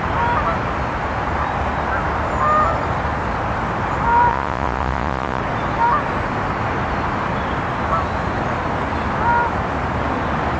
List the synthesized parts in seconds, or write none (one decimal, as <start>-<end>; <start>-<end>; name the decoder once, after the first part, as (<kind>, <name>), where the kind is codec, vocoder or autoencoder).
4.3-5.4 (vocoder, Vocos)